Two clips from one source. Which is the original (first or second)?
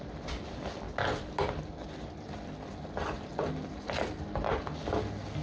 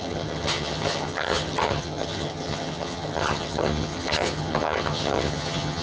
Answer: first